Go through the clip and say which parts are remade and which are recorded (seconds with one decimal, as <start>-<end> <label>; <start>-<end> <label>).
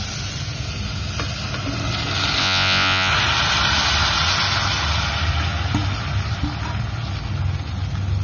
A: 0.0-2.4 recorded; 2.4-3.1 remade; 3.1-8.2 recorded